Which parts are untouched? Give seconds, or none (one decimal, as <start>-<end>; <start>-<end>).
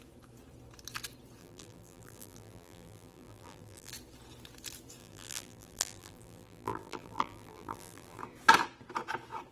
0.0-1.4; 3.9-5.0; 8.2-9.5